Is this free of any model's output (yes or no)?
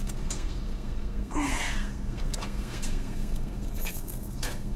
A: no